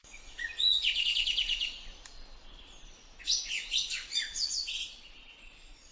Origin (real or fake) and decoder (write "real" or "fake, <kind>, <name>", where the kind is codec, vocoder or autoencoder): fake, vocoder, Vocos